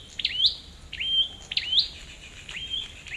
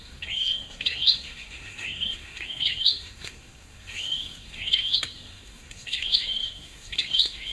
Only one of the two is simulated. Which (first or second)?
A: second